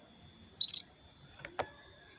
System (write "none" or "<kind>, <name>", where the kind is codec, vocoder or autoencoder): none